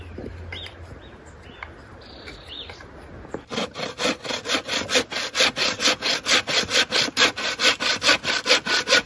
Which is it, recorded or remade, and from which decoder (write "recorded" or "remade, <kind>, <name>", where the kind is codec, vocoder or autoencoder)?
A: recorded